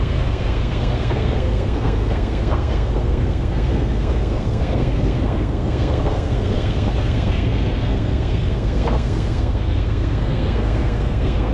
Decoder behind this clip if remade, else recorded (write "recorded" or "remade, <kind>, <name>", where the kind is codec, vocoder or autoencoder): remade, codec, SNAC